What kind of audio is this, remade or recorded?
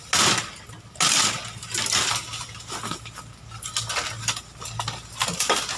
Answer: recorded